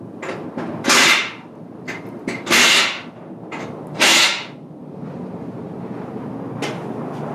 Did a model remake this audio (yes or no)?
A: no